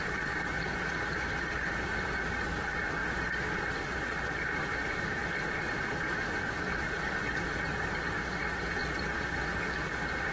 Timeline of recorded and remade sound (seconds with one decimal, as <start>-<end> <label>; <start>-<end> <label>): 0.0-3.0 remade; 3.0-4.8 recorded; 4.8-5.2 remade; 5.2-5.7 recorded; 5.7-8.8 remade; 8.8-9.5 recorded; 9.5-10.3 remade

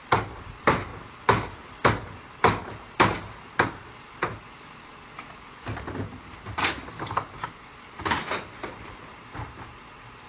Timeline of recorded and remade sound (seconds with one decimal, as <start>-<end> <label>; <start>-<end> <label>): 0.0-6.6 remade; 6.6-7.1 recorded; 7.1-10.3 remade

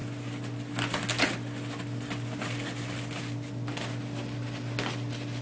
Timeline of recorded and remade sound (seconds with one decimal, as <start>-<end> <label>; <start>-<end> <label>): 0.0-5.4 recorded

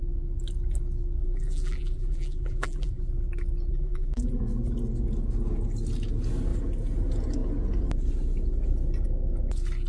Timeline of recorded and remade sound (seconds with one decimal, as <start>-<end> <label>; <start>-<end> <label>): 0.0-1.2 recorded; 1.2-3.0 remade; 3.0-3.7 recorded; 3.7-4.4 remade; 4.4-9.9 recorded

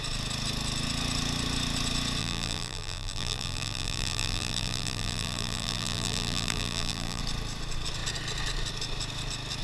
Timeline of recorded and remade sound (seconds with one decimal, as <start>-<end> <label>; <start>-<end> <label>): 0.0-2.2 recorded; 2.2-7.2 remade; 7.2-9.6 recorded

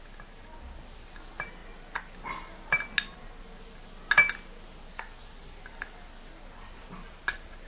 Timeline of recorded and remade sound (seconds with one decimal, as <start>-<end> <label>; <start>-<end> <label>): 0.0-7.7 recorded